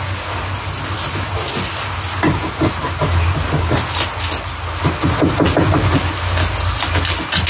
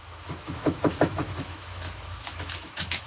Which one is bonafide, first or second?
first